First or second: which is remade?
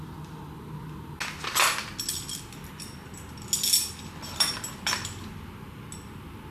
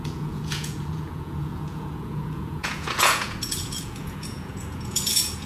second